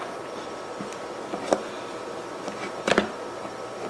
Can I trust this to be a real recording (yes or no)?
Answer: yes